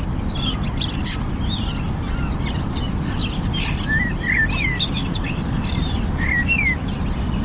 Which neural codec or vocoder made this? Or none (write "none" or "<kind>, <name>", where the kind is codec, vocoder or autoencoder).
none